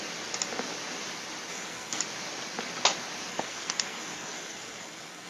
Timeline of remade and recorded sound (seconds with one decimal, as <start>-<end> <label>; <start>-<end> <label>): 0.0-1.5 recorded; 1.5-2.0 remade; 2.0-3.3 recorded; 3.3-5.3 remade